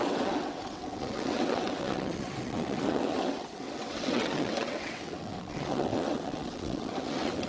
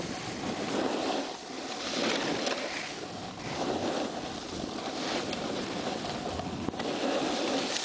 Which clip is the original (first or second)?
second